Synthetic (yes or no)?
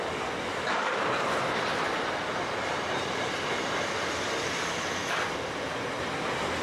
no